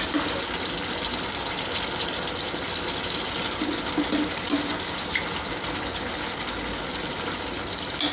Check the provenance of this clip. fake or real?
real